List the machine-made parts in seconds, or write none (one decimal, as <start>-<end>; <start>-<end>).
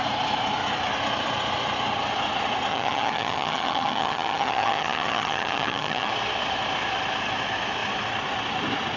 2.7-6.1